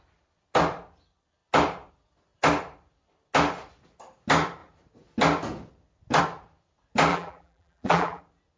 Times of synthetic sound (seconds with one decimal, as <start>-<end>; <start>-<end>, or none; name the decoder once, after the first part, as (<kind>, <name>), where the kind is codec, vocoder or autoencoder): 7.1-8.2 (vocoder, BigVGAN v2)